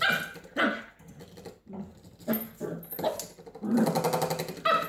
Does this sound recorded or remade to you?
recorded